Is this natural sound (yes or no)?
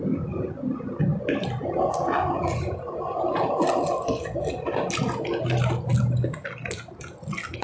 yes